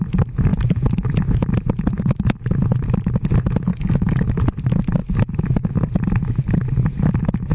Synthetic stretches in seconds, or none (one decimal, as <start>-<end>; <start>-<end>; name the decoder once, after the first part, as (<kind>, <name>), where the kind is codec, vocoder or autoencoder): 3.7-4.3 (codec, DAC)